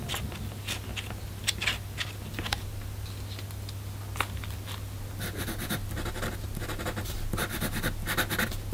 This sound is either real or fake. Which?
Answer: real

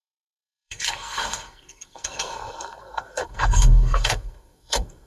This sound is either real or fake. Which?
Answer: fake